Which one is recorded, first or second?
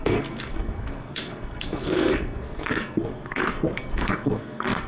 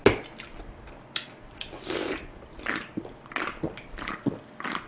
second